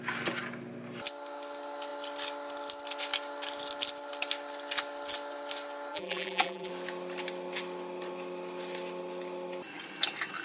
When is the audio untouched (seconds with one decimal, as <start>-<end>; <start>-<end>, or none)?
0.0-5.9; 6.7-10.4

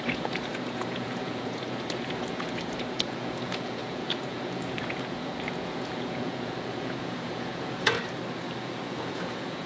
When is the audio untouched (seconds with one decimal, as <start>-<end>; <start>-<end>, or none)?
8.0-8.6

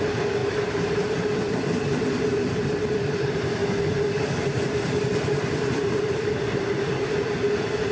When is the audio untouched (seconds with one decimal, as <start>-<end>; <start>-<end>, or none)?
3.6-4.4

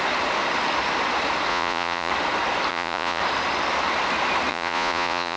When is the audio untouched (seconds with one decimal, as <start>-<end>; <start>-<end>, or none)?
0.0-1.5; 2.1-2.7; 3.2-4.5

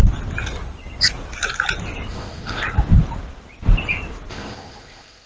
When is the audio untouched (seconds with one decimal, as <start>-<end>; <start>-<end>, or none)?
0.0-2.1; 2.6-4.3